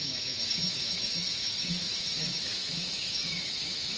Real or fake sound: fake